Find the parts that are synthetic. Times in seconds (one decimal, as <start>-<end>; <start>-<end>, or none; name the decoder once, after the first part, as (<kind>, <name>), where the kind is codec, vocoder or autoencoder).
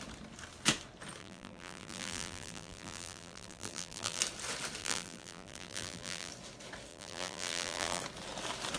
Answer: 1.2-4.2 (vocoder, BigVGAN v2); 4.8-6.3; 6.9-8.0